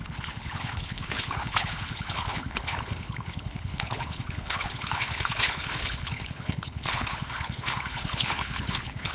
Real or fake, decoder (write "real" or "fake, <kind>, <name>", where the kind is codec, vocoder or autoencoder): fake, codec, HILCodec